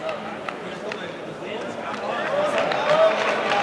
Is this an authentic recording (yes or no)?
yes